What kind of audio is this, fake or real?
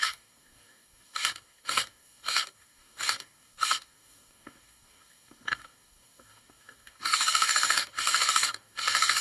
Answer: fake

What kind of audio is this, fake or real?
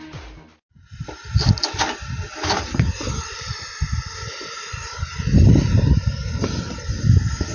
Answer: real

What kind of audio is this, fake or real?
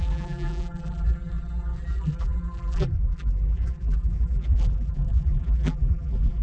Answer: fake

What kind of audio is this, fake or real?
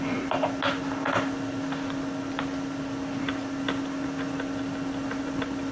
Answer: real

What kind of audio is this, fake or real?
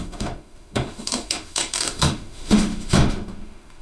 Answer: fake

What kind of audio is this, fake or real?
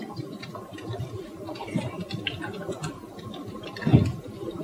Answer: real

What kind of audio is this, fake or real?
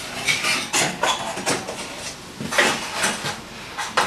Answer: real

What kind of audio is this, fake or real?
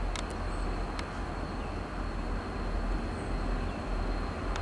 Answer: real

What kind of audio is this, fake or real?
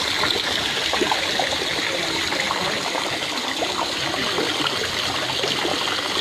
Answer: real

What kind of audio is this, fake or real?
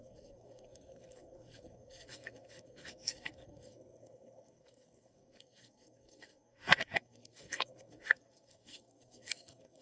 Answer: fake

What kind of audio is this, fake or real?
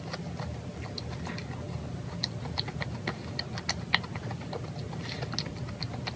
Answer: real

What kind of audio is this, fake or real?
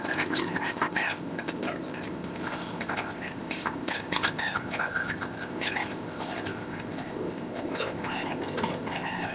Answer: fake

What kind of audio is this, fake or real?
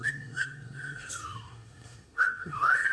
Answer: fake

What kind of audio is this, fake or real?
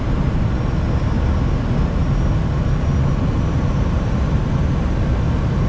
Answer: real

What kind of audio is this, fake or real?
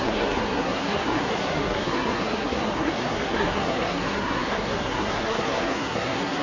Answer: fake